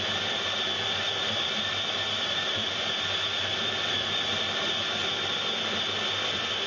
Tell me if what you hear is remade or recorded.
remade